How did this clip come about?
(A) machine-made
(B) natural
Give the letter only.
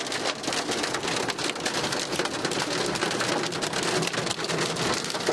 B